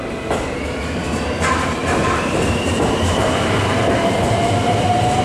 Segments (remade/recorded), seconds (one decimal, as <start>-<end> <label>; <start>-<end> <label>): 0.0-1.8 recorded; 1.8-5.2 remade